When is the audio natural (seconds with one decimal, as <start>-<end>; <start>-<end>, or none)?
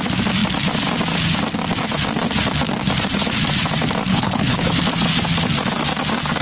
0.0-4.1; 4.8-6.4